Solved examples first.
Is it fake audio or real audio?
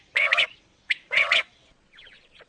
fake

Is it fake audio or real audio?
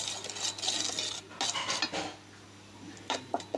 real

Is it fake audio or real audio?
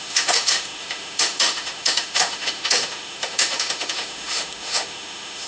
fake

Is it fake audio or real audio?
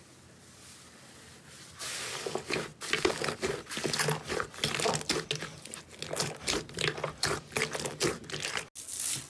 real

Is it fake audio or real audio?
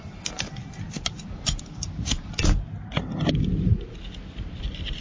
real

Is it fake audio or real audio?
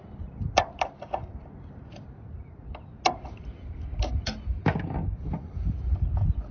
real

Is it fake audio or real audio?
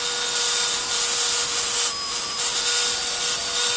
real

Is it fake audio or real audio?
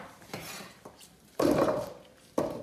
fake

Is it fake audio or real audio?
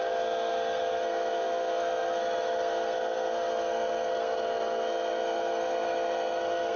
fake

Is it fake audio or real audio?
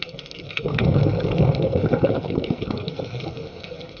fake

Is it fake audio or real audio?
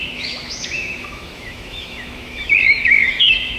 fake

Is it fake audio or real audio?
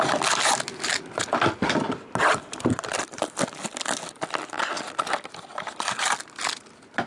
real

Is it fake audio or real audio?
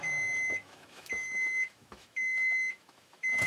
fake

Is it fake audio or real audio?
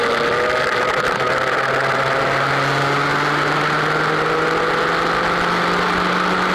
real